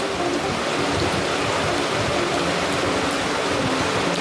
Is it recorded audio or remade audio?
recorded